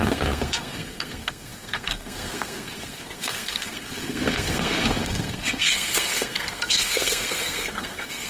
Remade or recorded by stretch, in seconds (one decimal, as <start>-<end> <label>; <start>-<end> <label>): 0.0-8.3 remade